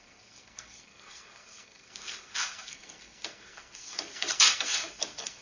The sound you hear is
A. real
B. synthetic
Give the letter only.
B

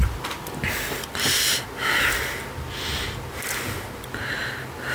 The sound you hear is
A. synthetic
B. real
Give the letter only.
B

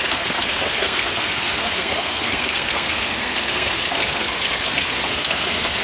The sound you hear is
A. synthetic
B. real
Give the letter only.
A